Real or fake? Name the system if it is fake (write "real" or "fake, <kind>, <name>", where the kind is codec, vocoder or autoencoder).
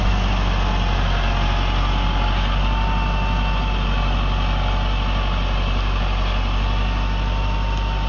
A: real